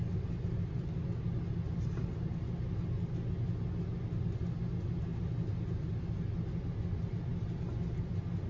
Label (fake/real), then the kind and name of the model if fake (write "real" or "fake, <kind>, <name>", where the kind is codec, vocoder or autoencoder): real